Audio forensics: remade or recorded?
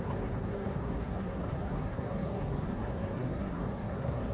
remade